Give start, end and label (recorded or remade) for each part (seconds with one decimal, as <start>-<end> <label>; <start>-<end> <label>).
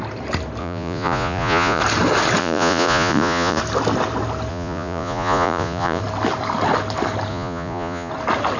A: 0.0-0.6 recorded; 0.6-1.8 remade; 1.8-2.4 recorded; 2.4-3.6 remade; 3.6-4.5 recorded; 4.5-6.0 remade; 6.0-7.3 recorded; 7.3-8.1 remade; 8.1-8.6 recorded